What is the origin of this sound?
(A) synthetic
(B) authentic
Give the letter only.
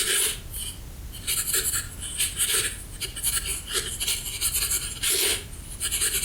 B